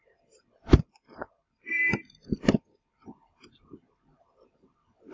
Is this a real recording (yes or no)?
no